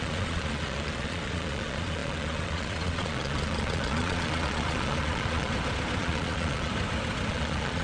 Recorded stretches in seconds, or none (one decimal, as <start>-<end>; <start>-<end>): 5.5-6.0; 6.7-7.3